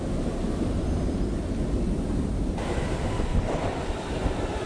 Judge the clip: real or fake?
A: real